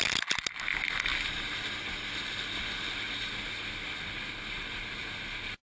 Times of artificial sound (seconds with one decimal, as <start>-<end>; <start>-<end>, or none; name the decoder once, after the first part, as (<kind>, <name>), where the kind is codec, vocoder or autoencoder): none